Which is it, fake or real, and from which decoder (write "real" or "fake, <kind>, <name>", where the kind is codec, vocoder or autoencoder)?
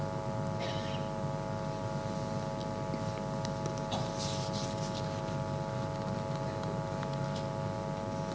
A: real